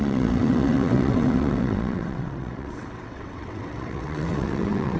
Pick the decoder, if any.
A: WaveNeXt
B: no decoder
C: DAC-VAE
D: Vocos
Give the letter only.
A